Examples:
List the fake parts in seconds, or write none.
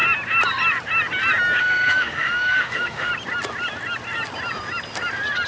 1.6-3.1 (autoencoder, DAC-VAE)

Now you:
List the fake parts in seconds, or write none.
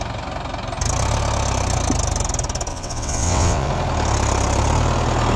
2.7-3.7 (vocoder, WaveNeXt)